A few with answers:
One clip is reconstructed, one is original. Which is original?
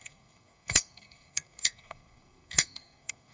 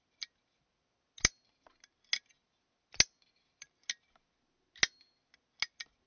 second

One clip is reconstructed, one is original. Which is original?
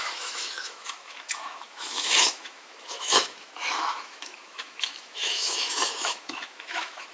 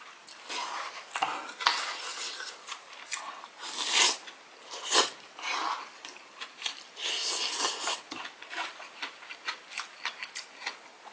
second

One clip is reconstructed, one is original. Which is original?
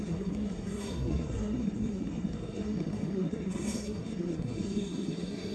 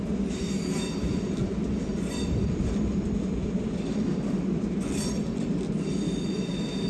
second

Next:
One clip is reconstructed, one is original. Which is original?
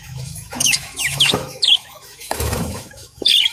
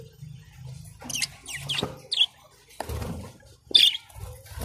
second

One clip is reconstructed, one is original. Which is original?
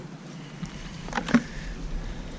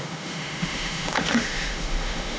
first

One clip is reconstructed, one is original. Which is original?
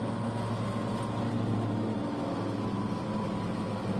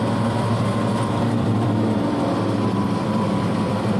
first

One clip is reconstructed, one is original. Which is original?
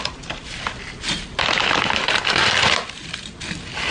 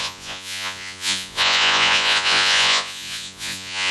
first